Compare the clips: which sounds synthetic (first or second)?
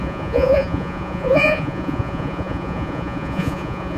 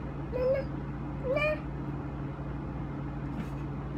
first